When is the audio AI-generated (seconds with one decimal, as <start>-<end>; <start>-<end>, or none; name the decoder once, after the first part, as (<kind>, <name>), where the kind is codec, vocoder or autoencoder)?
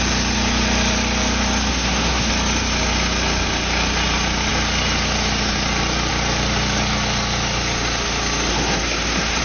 1.7-2.3 (codec, SNAC); 8.5-9.4